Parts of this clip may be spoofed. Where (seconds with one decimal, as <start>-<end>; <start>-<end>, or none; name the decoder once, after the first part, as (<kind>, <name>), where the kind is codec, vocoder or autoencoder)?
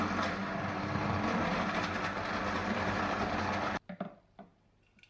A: 0.4-2.0 (vocoder, BigVGAN v2); 2.6-3.3